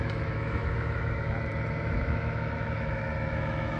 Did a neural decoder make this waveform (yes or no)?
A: yes